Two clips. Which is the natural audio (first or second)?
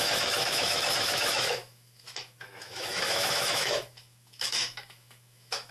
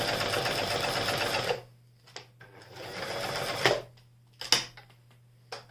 second